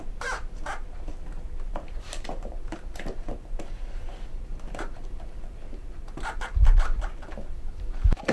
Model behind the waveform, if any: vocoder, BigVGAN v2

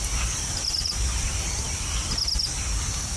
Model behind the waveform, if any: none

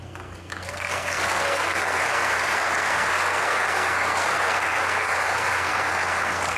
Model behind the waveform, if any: codec, SNAC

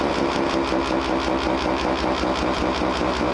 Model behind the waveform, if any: none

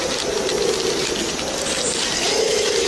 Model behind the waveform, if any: none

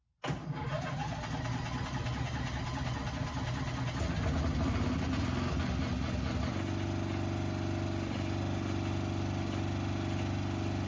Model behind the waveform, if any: none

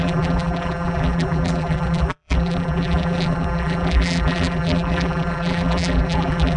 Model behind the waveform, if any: vocoder, BigVGAN v2